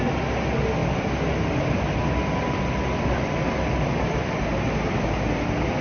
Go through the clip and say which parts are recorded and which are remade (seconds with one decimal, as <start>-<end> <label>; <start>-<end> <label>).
0.0-5.8 recorded